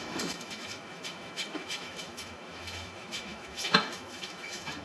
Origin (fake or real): fake